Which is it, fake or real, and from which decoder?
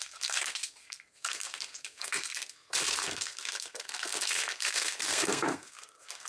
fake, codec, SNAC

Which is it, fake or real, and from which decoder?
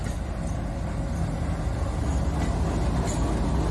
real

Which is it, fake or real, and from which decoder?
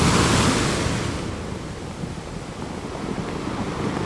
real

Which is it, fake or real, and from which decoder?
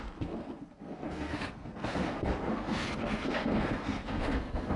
fake, codec, SNAC